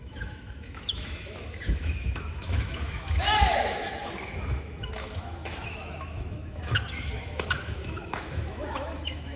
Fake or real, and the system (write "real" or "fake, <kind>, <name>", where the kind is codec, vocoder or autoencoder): fake, autoencoder, DAC-VAE